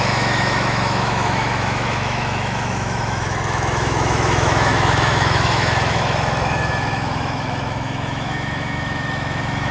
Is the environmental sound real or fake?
fake